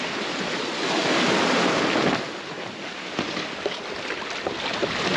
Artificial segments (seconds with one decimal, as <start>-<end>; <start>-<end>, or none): none